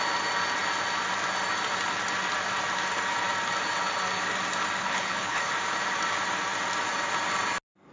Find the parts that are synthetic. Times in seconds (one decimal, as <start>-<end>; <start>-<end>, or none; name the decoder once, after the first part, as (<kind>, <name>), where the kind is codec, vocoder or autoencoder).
4.8-5.5 (codec, HILCodec)